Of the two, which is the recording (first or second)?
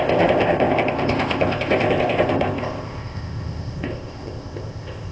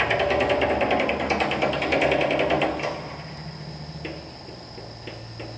second